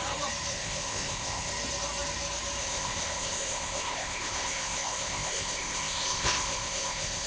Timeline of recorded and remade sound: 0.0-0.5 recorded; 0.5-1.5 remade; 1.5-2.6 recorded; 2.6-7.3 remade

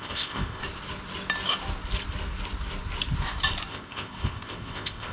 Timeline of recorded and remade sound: 0.0-0.6 remade; 0.6-3.7 recorded; 3.7-5.1 remade

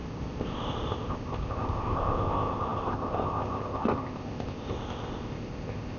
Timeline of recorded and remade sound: 0.0-6.0 remade